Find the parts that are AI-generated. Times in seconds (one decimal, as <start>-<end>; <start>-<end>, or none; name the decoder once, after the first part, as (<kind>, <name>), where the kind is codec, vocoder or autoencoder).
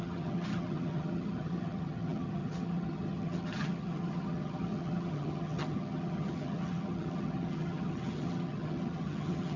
0.0-9.6 (vocoder, HiFi-GAN)